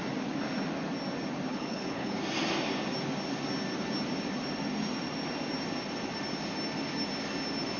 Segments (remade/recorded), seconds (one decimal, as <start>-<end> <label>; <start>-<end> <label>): 0.0-1.5 recorded; 1.5-2.2 remade; 2.2-7.8 recorded